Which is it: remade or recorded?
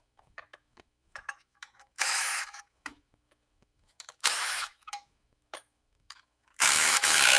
remade